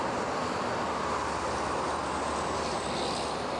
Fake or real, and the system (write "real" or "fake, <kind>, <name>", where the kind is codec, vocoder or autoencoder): real